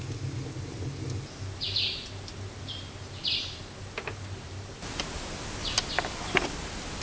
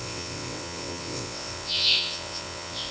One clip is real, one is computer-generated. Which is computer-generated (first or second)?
second